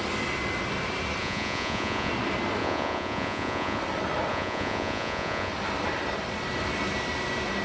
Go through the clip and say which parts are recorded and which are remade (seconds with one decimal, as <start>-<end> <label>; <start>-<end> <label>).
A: 0.0-1.2 recorded; 1.2-2.1 remade; 2.1-2.6 recorded; 2.6-3.8 remade; 3.8-4.3 recorded; 4.3-5.5 remade; 5.5-7.6 recorded

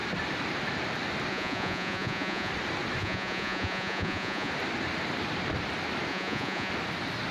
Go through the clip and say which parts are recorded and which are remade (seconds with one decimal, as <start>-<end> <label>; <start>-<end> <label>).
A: 0.0-1.3 recorded; 1.3-2.5 remade; 2.5-3.0 recorded; 3.0-4.5 remade; 4.5-6.1 recorded; 6.1-6.7 remade; 6.7-7.3 recorded

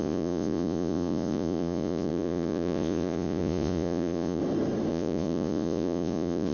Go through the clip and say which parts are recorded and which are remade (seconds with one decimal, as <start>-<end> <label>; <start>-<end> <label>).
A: 0.0-4.4 remade; 4.4-4.9 recorded; 4.9-6.5 remade

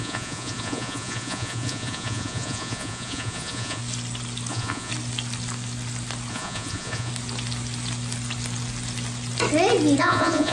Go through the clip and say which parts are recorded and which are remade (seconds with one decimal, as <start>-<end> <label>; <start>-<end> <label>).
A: 0.0-3.8 remade; 3.8-4.5 recorded; 4.5-4.9 remade; 4.9-6.3 recorded; 6.3-7.1 remade; 7.1-10.0 recorded; 10.0-10.5 remade

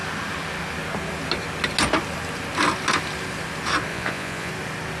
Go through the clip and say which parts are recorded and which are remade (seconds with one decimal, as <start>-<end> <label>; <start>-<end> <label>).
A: 0.0-3.9 recorded; 3.9-4.5 remade; 4.5-5.0 recorded

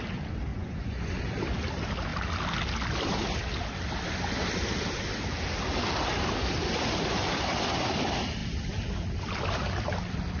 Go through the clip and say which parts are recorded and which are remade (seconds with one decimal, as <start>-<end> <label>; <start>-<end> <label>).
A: 0.0-0.5 recorded; 0.5-1.1 remade; 1.1-10.4 recorded

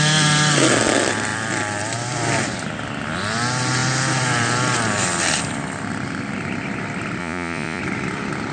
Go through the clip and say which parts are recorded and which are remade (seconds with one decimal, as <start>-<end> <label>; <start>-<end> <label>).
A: 0.0-7.2 recorded; 7.2-7.8 remade; 7.8-8.5 recorded

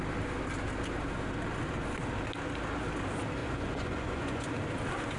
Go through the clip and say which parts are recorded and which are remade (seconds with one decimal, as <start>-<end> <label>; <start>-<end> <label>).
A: 0.0-3.4 recorded; 3.4-4.5 remade; 4.5-5.2 recorded